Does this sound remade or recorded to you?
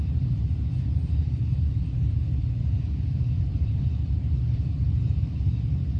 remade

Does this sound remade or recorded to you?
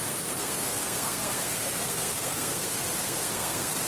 remade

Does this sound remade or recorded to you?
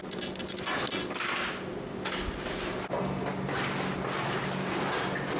recorded